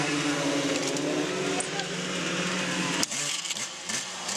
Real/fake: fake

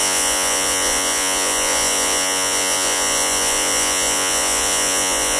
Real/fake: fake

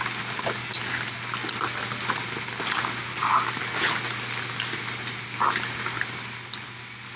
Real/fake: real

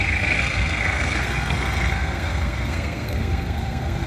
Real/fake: fake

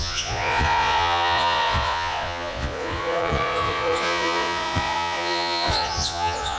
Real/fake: fake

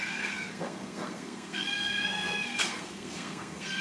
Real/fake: fake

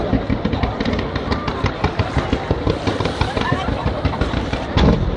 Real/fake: fake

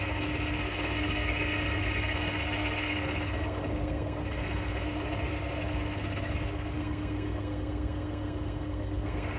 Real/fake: fake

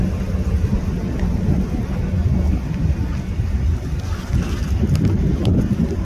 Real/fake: real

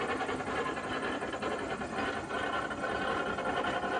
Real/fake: real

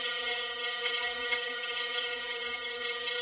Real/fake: fake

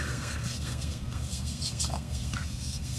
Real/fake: fake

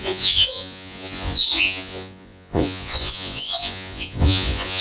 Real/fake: fake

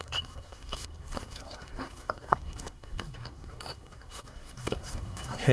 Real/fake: fake